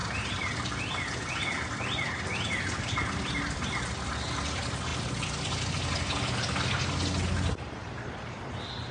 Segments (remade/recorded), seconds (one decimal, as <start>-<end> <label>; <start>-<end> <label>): 0.0-4.0 remade; 4.0-7.8 recorded; 7.8-8.5 remade; 8.5-8.9 recorded